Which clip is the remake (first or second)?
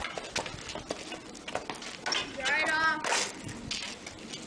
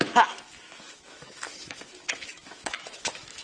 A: second